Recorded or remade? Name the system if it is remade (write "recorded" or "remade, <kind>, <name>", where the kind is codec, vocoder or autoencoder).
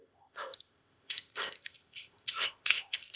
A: remade, codec, ZipCodec